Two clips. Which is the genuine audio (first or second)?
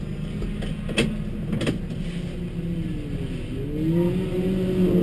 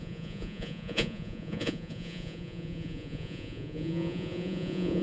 first